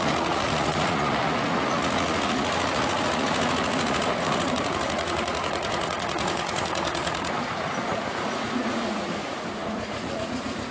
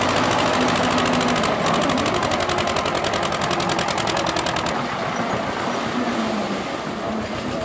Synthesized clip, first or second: first